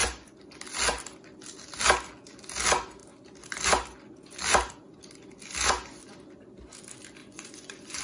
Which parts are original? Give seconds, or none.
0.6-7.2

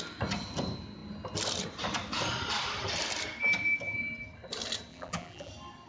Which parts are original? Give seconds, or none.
0.0-4.9; 5.5-5.9

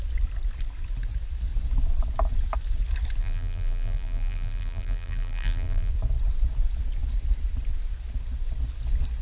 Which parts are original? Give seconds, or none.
0.0-3.2; 5.9-9.2

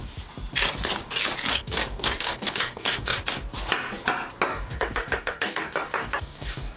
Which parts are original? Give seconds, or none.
0.0-1.5; 3.2-4.5

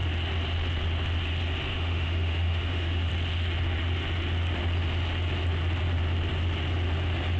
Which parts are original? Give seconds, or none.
0.0-1.7; 3.1-7.4

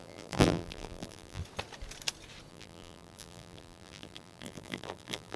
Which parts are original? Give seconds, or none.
1.4-2.5